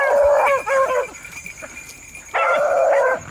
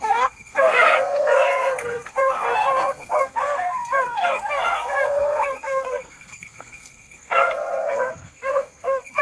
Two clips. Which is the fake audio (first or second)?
second